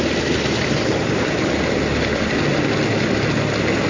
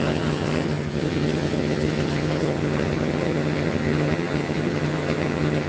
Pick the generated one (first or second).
second